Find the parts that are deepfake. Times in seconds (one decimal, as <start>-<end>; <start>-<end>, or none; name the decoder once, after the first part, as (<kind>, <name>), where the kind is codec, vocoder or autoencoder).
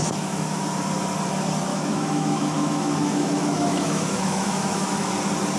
0.0-0.6 (autoencoder, DAC-VAE); 1.7-5.1